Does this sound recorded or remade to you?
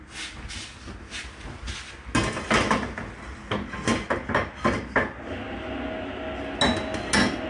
recorded